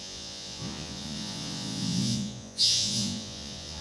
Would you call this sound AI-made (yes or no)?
yes